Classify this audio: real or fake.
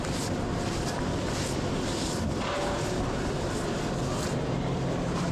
fake